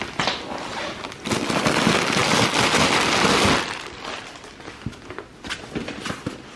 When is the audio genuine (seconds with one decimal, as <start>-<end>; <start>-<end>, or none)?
0.0-6.6